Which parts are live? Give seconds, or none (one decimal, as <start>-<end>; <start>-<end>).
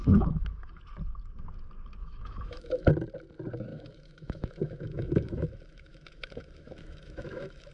0.8-2.0; 2.9-3.7